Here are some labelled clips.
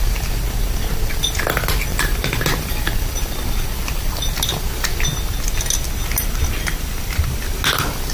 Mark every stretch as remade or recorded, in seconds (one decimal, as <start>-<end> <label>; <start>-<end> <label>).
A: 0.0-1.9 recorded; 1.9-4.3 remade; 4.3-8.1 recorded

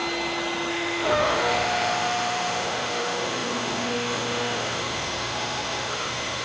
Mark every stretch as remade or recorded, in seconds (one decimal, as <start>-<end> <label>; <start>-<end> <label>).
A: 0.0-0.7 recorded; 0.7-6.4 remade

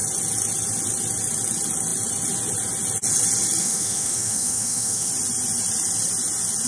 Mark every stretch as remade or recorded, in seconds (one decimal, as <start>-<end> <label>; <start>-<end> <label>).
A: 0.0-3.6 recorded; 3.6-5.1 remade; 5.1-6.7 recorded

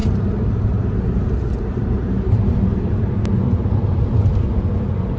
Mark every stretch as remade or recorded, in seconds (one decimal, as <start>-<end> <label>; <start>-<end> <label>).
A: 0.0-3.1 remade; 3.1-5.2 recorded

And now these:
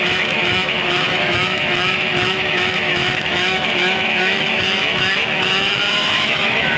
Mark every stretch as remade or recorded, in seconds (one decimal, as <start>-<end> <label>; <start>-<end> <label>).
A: 0.0-6.8 remade

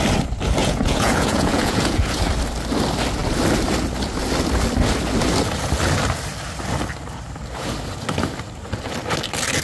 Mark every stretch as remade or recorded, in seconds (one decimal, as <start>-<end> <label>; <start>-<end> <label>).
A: 0.0-0.6 recorded; 0.6-2.3 remade; 2.3-9.6 recorded

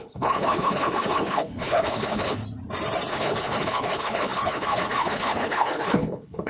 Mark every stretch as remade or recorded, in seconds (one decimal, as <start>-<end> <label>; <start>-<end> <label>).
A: 0.0-2.4 remade; 2.4-3.1 recorded; 3.1-6.5 remade

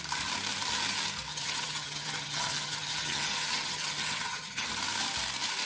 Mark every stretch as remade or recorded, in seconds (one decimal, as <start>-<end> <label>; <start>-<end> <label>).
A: 0.0-1.3 recorded; 1.3-4.7 remade; 4.7-5.7 recorded